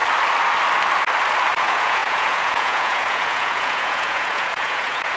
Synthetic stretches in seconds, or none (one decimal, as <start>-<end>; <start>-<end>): 1.6-5.2